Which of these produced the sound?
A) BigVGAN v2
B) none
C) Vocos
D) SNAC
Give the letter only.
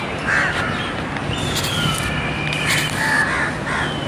B